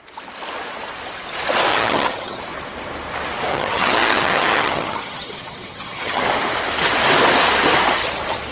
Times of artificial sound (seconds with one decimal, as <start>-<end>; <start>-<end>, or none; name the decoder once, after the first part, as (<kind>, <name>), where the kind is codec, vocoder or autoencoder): 1.7-2.4 (vocoder, HiFi-GAN); 3.5-6.2